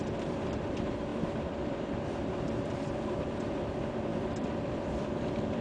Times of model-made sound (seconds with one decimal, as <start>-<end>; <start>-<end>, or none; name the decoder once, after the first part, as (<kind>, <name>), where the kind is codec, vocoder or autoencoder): 0.0-5.6 (vocoder, BigVGAN v2)